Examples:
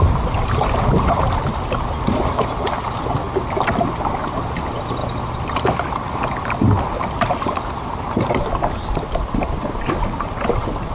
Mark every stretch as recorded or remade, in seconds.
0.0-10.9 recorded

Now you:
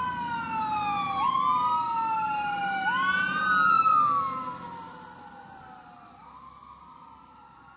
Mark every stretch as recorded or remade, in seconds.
0.0-7.8 recorded

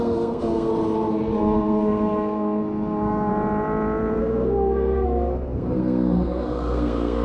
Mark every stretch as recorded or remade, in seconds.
0.0-0.7 remade; 0.7-1.4 recorded; 1.4-3.3 remade; 3.3-4.2 recorded; 4.2-7.2 remade

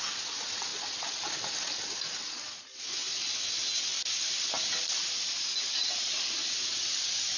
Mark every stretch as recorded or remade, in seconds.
0.0-7.4 recorded

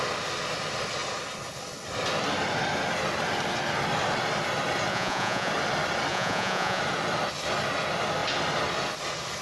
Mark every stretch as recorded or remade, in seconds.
0.0-4.9 recorded; 4.9-5.5 remade; 5.5-6.1 recorded; 6.1-6.8 remade; 6.8-9.4 recorded